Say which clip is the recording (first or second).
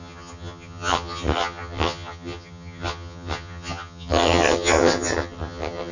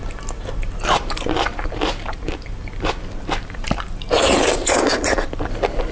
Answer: second